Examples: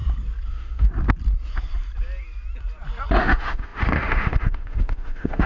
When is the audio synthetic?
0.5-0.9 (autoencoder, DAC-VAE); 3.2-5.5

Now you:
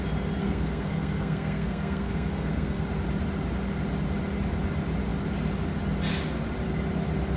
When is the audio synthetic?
0.4-2.8 (codec, SNAC)

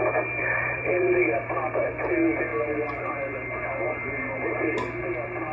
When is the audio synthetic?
0.4-1.9 (vocoder, BigVGAN v2); 2.5-3.1

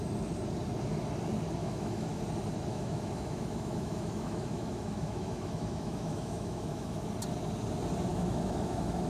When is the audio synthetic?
1.6-2.2 (autoencoder, DAC-VAE); 2.7-7.1; 8.1-9.1

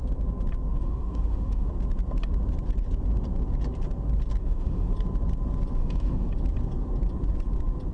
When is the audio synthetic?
0.7-1.7 (autoencoder, DAC-VAE); 4.4-4.9; 5.8-6.3

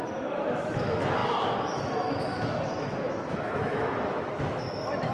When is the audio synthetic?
0.0-5.1 (autoencoder, DAC-VAE)

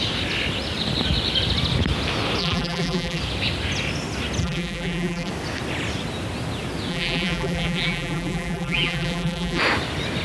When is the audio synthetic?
2.4-3.2 (vocoder, BigVGAN v2); 4.4-5.3; 6.9-9.6

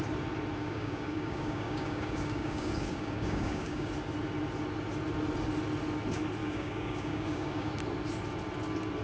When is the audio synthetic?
0.6-3.9 (codec, DAC); 6.4-7.7